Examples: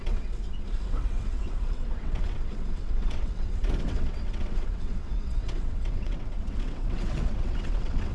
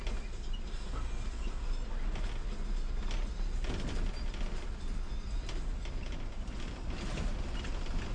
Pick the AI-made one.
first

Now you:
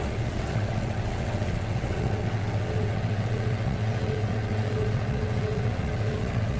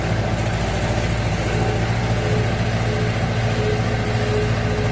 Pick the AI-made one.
first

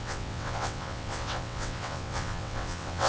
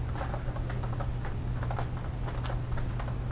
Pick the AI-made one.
first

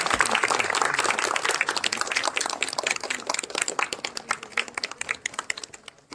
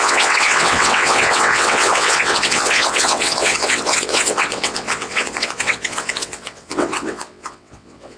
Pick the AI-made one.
second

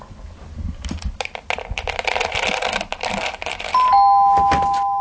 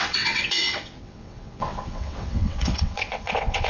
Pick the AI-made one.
second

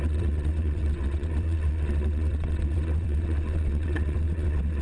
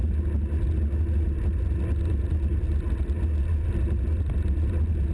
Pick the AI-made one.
first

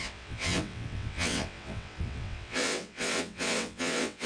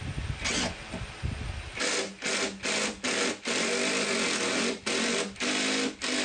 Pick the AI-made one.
first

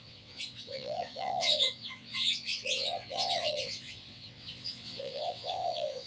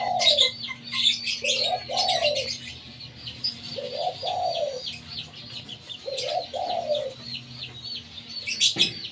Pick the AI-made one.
first